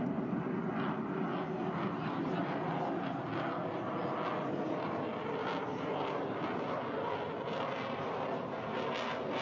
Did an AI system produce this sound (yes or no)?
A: no